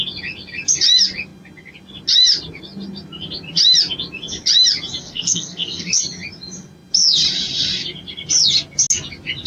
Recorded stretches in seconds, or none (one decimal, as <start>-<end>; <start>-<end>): 0.0-5.0; 5.9-9.5